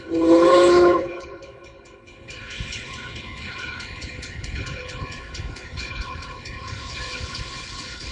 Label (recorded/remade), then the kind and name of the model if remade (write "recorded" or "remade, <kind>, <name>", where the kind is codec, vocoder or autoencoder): remade, codec, HILCodec